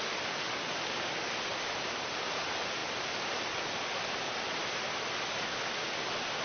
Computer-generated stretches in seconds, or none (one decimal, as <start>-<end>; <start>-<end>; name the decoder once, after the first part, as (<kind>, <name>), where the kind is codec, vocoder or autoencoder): none